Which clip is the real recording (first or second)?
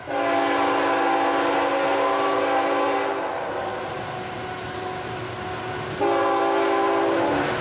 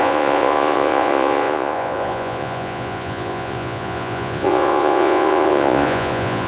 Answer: first